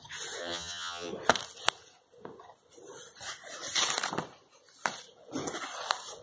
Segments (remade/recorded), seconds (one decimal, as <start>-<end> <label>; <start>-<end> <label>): 0.0-0.4 recorded; 0.4-1.1 remade; 1.1-6.2 recorded